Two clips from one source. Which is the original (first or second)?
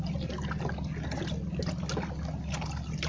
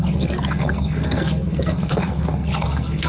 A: first